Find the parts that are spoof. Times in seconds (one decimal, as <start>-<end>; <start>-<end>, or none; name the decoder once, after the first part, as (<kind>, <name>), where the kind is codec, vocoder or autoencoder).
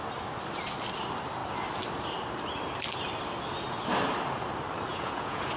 4.9-5.6 (vocoder, Vocos)